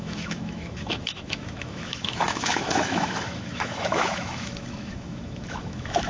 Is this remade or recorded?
remade